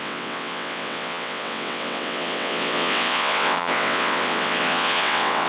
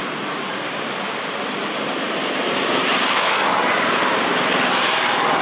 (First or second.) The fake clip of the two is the first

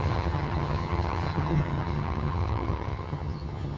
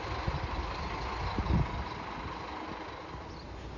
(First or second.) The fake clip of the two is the first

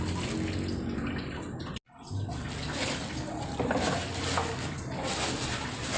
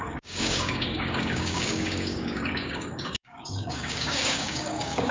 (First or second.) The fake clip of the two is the second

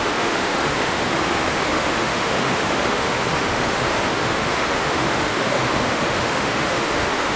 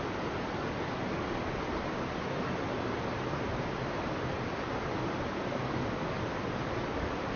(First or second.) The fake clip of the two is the first